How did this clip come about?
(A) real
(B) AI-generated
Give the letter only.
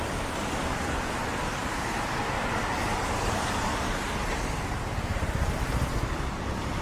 B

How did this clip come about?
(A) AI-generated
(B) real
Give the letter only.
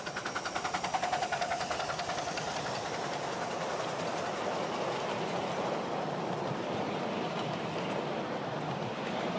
A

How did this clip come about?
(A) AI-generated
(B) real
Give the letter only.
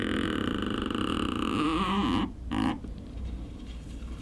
A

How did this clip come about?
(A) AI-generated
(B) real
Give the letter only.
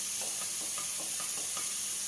A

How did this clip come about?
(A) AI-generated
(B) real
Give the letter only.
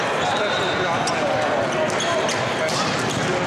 B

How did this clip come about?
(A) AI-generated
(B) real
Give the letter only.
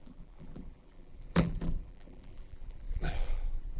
A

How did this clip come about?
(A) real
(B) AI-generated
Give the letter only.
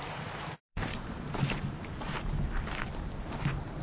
B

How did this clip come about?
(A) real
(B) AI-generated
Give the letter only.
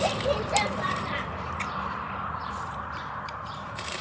B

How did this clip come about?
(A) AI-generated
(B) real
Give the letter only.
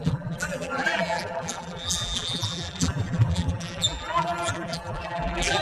A